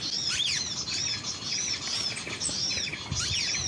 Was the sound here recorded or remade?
recorded